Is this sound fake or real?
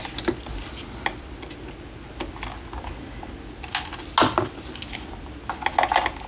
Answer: real